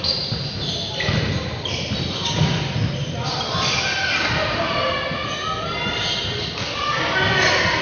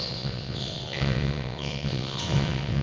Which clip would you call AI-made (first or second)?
second